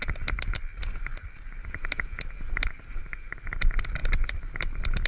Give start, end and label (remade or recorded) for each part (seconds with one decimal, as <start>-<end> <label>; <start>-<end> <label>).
0.0-5.1 recorded